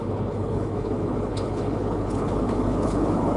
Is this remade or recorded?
remade